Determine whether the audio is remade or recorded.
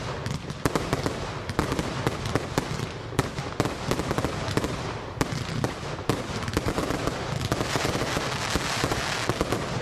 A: recorded